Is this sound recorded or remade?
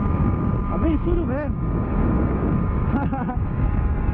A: remade